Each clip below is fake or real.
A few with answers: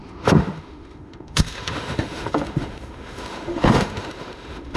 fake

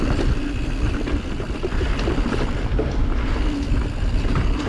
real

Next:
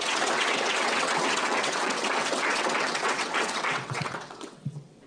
fake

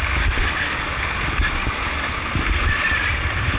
real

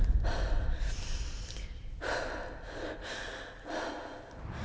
real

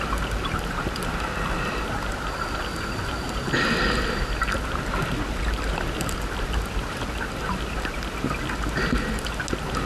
real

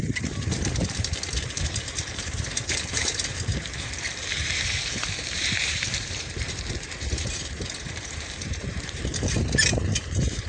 fake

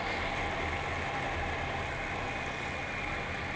real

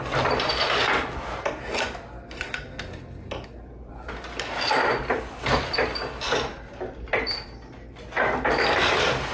real